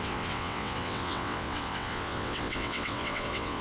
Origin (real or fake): fake